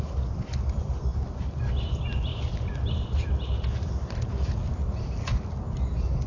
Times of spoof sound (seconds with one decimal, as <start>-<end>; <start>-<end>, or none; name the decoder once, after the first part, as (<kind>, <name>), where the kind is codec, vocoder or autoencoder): none